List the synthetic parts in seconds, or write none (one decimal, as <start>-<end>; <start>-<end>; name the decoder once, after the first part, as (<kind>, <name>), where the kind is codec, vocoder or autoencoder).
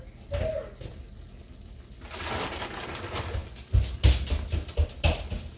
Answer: none